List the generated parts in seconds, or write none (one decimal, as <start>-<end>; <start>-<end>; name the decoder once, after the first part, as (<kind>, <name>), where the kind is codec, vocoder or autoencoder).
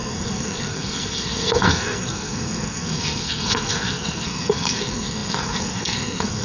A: 0.0-6.4 (codec, SNAC)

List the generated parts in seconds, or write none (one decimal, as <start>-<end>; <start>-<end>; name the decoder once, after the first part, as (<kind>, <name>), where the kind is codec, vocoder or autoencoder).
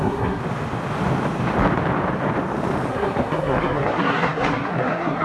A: 0.0-0.4 (codec, SNAC); 2.9-5.2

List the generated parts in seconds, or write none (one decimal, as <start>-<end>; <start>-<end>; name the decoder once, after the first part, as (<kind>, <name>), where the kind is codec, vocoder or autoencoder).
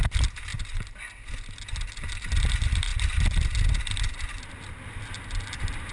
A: none